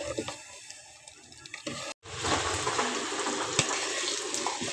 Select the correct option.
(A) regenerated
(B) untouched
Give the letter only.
B